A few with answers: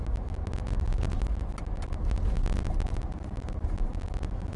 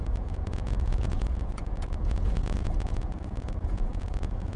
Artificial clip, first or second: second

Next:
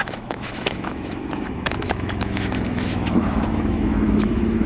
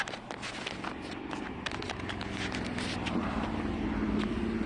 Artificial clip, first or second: first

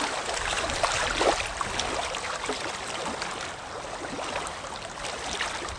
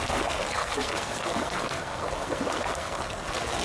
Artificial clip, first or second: second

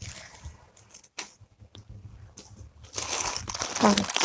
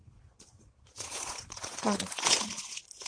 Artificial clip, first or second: second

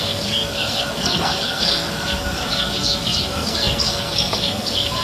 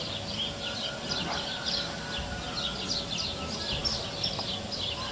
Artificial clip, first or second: first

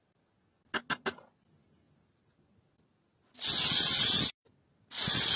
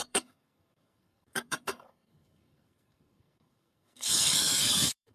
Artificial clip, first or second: second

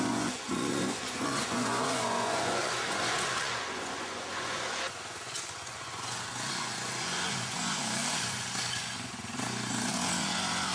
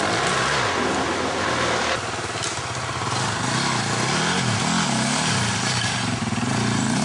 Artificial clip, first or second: first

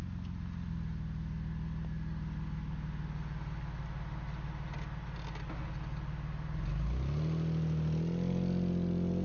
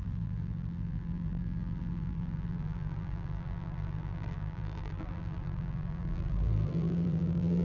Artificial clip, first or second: second